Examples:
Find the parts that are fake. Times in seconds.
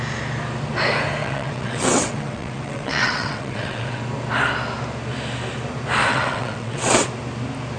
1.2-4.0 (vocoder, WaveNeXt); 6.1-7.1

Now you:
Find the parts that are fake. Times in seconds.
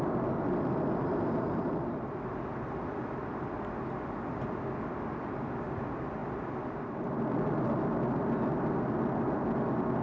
none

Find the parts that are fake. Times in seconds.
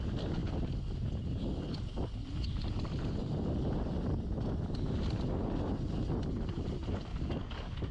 7.1-7.9 (codec, DAC)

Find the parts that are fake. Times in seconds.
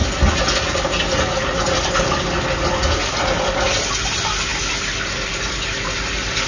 none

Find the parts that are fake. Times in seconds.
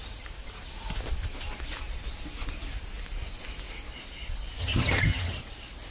4.6-5.4 (vocoder, HiFi-GAN)